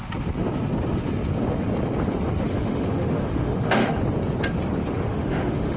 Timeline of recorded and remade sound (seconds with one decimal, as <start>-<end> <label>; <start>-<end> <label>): 0.0-2.5 recorded; 2.5-4.0 remade; 4.0-4.8 recorded; 4.8-5.8 remade